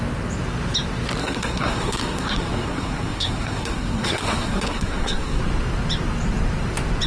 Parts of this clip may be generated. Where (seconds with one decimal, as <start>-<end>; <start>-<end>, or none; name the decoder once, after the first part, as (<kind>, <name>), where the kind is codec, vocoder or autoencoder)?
1.2-5.4 (codec, SNAC)

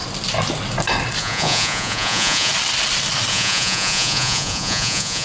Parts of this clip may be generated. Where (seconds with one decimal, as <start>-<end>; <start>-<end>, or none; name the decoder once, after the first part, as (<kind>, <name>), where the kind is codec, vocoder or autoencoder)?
1.2-2.5 (vocoder, Vocos); 3.3-5.2

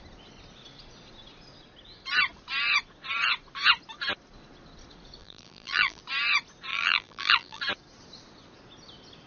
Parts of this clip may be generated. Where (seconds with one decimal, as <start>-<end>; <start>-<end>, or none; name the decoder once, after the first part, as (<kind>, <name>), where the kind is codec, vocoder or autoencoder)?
5.2-6.0 (vocoder, BigVGAN v2); 6.7-7.6

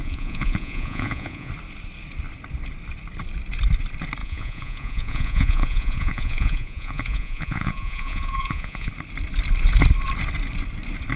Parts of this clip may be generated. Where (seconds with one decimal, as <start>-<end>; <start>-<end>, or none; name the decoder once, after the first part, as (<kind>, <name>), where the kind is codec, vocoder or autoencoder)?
0.0-1.5 (vocoder, Vocos); 4.2-8.9

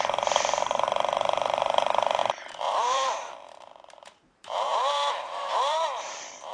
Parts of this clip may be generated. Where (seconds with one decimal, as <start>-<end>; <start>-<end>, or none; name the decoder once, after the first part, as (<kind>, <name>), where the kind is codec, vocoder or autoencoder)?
0.0-6.5 (vocoder, BigVGAN v2)

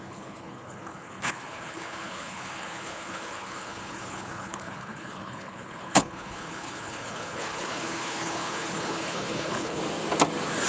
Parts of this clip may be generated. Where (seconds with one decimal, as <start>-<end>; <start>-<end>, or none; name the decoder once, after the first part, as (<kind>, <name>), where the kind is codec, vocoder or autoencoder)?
0.0-9.8 (codec, HILCodec)